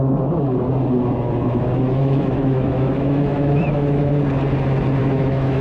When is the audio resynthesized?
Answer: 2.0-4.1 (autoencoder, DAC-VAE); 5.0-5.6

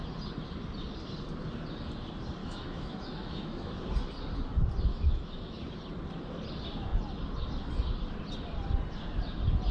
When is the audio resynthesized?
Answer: 2.4-3.8 (autoencoder, DAC-VAE); 4.9-5.6

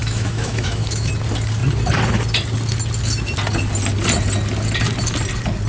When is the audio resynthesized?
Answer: 0.0-1.1 (autoencoder, DAC-VAE)